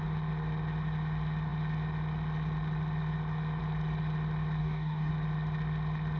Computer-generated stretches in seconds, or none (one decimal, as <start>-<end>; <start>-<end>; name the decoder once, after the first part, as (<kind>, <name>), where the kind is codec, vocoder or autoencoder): 4.6-5.1 (codec, DAC)